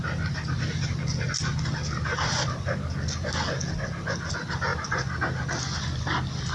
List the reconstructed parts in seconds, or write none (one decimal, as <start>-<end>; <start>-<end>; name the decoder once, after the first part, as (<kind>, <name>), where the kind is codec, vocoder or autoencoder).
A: none